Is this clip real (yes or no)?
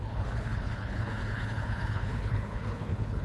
no